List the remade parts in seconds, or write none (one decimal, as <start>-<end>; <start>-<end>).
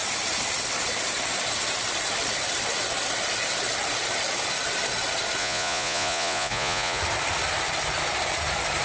5.4-7.0